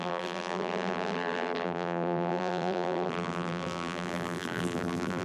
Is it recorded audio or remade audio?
remade